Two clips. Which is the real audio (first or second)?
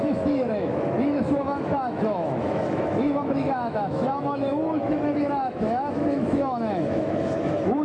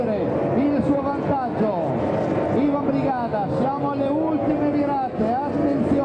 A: second